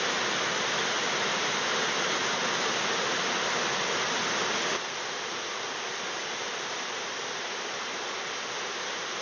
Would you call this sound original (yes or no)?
yes